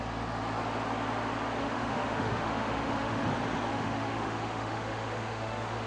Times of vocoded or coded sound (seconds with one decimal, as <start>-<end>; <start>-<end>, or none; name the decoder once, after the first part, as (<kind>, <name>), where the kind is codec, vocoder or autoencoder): 1.6-3.3 (autoencoder, DAC-VAE); 3.7-5.9